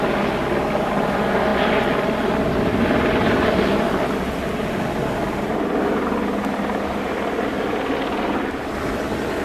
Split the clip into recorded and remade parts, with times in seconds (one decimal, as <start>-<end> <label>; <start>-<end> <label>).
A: 0.0-9.4 recorded